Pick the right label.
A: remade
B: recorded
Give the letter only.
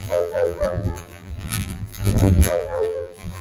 A